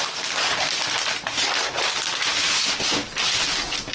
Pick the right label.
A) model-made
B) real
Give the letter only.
B